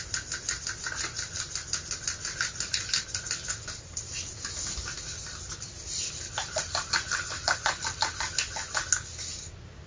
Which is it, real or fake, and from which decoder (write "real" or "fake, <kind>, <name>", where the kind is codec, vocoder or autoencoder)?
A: real